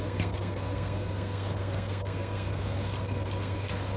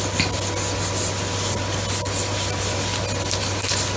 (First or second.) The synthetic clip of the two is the first